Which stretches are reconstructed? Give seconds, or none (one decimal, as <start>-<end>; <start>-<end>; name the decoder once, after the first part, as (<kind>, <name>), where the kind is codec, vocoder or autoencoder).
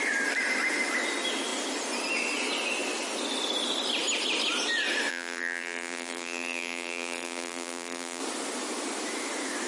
5.1-8.2 (vocoder, BigVGAN v2)